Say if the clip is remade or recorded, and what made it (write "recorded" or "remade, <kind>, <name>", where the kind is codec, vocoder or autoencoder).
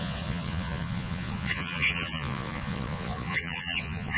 remade, vocoder, Vocos